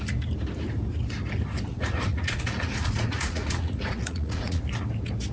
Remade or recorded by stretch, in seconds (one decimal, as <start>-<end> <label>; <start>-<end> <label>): 0.0-1.7 recorded; 1.7-4.6 remade; 4.6-5.3 recorded

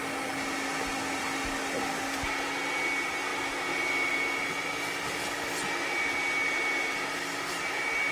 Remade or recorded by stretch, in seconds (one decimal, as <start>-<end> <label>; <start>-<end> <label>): 0.0-8.1 recorded

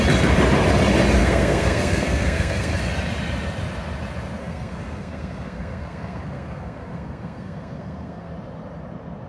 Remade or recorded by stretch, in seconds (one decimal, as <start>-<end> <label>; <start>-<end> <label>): 0.0-1.2 recorded; 1.2-2.8 remade; 2.8-4.4 recorded; 4.4-8.3 remade; 8.3-9.3 recorded